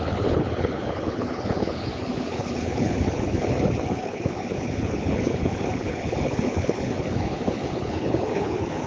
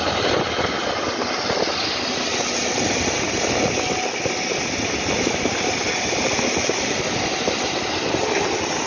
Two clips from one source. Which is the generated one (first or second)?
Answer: first